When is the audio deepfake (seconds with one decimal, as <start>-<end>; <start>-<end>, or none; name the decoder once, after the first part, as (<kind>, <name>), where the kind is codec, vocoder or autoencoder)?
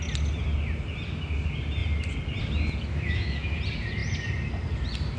2.9-3.6 (autoencoder, DAC-VAE)